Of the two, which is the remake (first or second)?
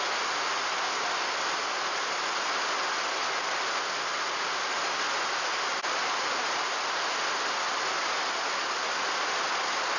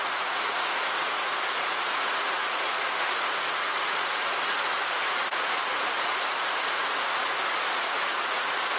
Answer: second